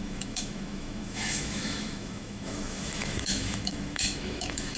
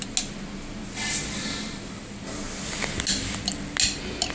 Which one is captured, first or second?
second